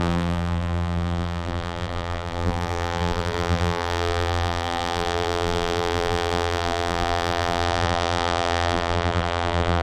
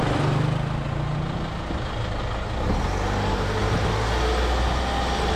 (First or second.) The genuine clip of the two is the second